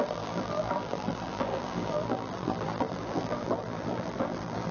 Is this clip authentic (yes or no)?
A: no